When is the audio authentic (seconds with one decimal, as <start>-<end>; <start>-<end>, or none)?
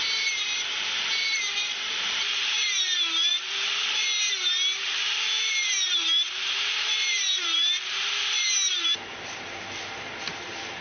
none